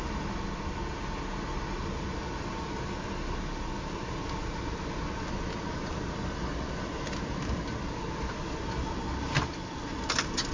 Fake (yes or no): no